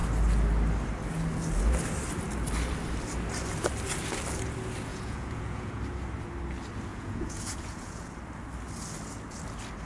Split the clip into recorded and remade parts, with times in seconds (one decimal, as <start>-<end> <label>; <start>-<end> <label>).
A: 0.0-4.9 recorded; 4.9-5.8 remade; 5.8-6.9 recorded; 6.9-8.1 remade; 8.1-9.9 recorded